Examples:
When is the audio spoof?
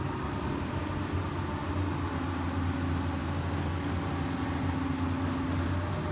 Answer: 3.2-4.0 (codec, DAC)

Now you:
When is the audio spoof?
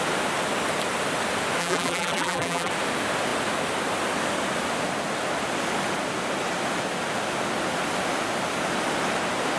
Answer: 1.6-2.7 (vocoder, BigVGAN v2)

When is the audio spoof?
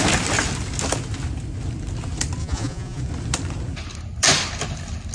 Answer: 2.4-3.0 (vocoder, Vocos)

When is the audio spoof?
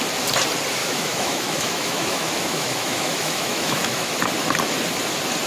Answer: 0.8-4.1 (autoencoder, DAC-VAE)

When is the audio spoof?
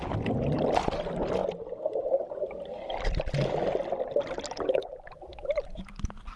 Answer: none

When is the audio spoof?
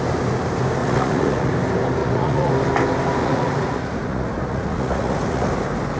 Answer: 0.8-1.5 (vocoder, Vocos); 2.0-2.5; 3.2-5.5